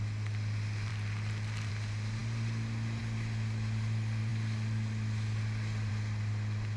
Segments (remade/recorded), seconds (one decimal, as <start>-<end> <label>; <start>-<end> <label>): 0.0-6.8 recorded